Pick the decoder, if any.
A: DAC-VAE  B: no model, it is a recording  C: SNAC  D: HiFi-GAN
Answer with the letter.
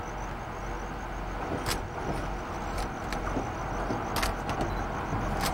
B